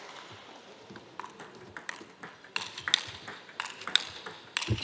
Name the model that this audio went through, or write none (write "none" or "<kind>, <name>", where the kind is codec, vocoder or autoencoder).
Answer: none